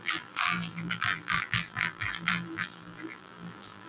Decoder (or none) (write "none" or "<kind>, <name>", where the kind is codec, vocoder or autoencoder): vocoder, BigVGAN v2